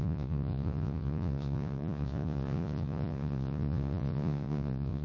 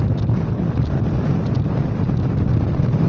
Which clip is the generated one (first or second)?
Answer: first